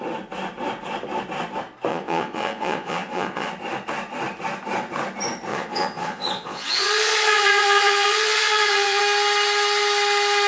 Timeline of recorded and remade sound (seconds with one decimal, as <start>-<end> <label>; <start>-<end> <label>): 0.0-1.9 recorded; 1.9-3.5 remade; 3.5-5.5 recorded; 5.5-9.0 remade; 9.0-10.5 recorded